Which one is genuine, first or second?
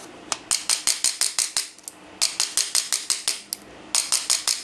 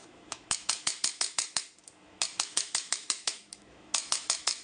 first